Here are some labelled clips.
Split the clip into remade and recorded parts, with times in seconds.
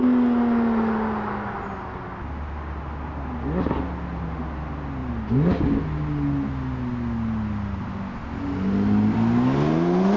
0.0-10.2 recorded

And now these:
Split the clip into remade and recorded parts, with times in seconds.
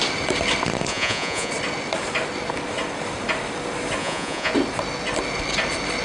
0.0-0.9 recorded; 0.9-1.5 remade; 1.5-4.0 recorded; 4.0-4.5 remade; 4.5-6.0 recorded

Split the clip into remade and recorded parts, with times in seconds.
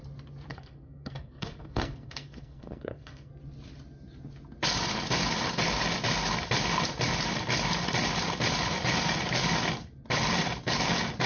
0.0-0.5 recorded; 0.5-3.3 remade; 3.3-11.3 recorded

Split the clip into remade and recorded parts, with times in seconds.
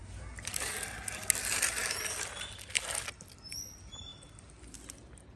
0.0-5.4 recorded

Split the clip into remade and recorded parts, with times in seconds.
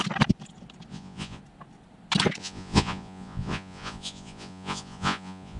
0.0-0.9 recorded; 0.9-1.4 remade; 1.4-2.4 recorded; 2.4-5.6 remade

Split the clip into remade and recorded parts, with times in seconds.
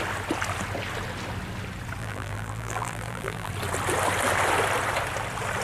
0.0-2.0 recorded; 2.0-3.5 remade; 3.5-5.6 recorded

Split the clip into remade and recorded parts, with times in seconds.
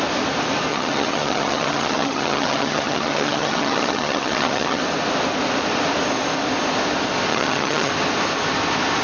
0.0-0.7 recorded; 0.7-4.8 remade; 4.8-7.3 recorded; 7.3-7.9 remade; 7.9-9.0 recorded